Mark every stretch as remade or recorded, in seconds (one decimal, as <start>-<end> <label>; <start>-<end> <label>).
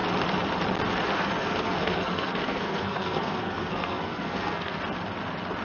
0.0-1.4 recorded; 1.4-4.8 remade; 4.8-5.6 recorded